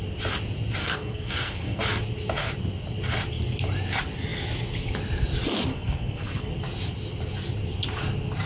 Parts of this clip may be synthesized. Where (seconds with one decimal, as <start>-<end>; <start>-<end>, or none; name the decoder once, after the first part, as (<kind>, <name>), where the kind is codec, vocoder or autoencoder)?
0.8-1.8 (codec, SNAC); 5.7-6.5